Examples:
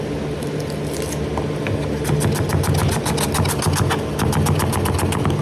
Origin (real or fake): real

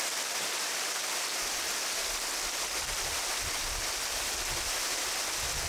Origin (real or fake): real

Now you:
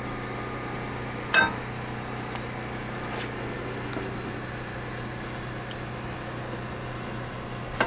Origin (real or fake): real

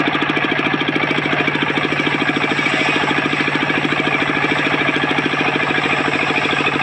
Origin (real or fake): real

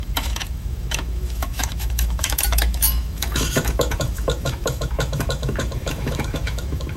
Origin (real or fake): fake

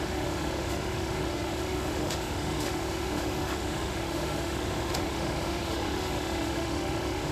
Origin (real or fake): fake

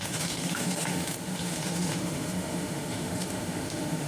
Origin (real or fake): fake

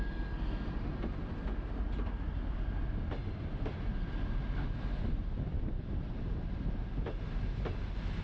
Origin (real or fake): real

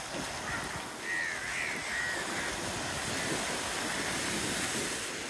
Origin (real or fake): real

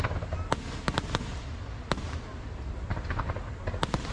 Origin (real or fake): real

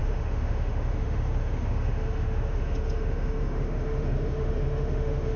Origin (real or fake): fake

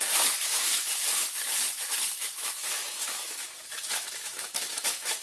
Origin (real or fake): fake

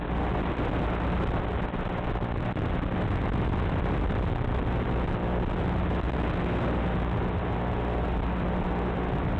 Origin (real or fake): real